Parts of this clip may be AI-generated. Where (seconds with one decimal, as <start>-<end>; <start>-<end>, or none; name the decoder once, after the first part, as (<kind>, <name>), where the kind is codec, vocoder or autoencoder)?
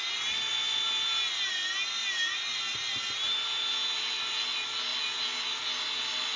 none